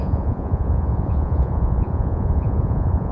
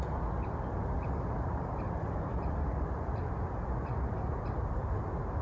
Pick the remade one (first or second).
first